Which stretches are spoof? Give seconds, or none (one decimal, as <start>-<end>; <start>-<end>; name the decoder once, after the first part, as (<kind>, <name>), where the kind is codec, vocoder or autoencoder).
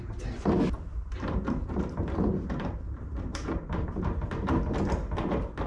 0.9-4.3 (vocoder, BigVGAN v2)